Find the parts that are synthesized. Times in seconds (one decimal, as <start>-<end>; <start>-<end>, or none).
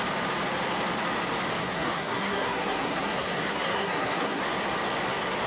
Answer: 1.6-4.4